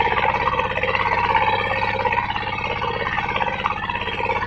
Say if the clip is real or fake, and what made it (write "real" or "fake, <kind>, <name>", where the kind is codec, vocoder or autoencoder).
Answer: real